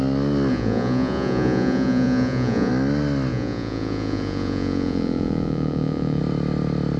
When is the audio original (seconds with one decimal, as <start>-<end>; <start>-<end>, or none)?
0.0-0.5; 2.7-3.3; 6.2-7.0